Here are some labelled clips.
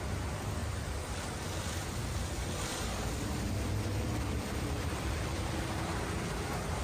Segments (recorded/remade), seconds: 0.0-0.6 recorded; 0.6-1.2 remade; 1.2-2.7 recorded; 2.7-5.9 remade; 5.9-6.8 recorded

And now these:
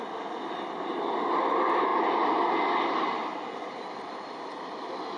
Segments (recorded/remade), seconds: 0.0-5.2 recorded

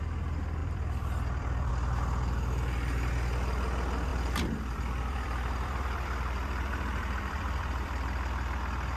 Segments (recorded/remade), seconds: 0.0-0.6 recorded; 0.6-1.7 remade; 1.7-4.1 recorded; 4.1-8.6 remade; 8.6-9.0 recorded

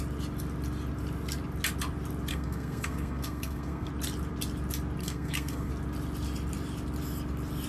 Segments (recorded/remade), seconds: 0.0-2.3 recorded; 2.3-3.9 remade; 3.9-5.0 recorded; 5.0-5.7 remade; 5.7-7.7 recorded

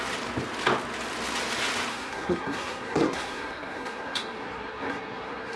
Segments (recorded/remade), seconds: 0.0-1.9 recorded; 1.9-5.6 remade

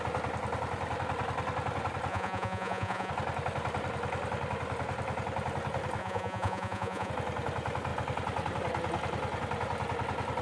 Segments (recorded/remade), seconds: 0.0-2.1 recorded; 2.1-3.1 remade; 3.1-6.0 recorded; 6.0-7.1 remade; 7.1-10.4 recorded

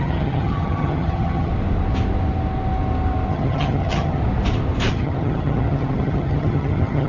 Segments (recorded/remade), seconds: 0.0-1.5 remade; 1.5-3.3 recorded; 3.3-4.2 remade; 4.2-4.9 recorded; 4.9-7.1 remade

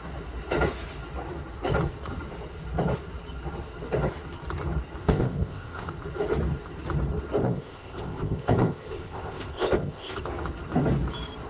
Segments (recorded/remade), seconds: 0.0-5.0 recorded; 5.0-5.9 remade; 5.9-7.4 recorded; 7.4-10.3 remade; 10.3-11.5 recorded